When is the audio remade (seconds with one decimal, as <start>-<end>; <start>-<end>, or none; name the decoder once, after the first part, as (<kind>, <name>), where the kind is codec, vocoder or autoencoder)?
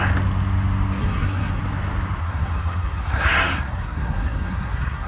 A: 1.0-1.6 (codec, SNAC); 2.2-5.1